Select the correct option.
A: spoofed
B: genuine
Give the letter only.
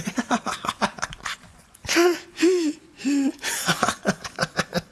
A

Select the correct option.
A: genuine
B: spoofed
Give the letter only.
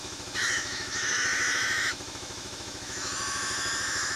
B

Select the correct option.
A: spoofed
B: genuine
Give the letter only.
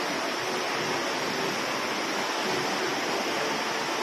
B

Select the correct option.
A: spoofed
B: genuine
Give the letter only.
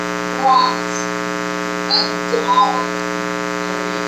B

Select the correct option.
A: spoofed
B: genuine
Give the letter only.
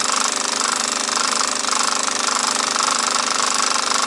B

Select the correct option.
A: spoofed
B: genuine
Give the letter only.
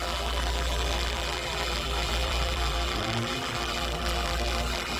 A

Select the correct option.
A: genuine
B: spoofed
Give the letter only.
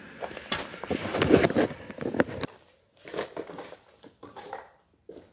B